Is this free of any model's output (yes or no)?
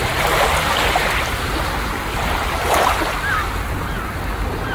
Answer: yes